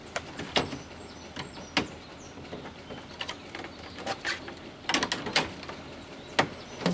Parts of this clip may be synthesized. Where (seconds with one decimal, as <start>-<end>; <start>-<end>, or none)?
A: none